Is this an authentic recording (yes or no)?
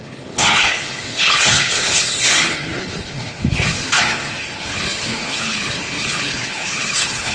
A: no